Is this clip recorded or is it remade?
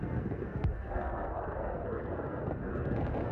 remade